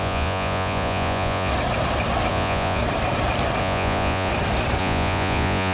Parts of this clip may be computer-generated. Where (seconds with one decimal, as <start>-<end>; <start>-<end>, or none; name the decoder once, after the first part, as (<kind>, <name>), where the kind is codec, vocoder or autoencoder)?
0.0-1.5 (vocoder, Vocos); 2.3-2.8; 3.6-4.3; 4.8-5.7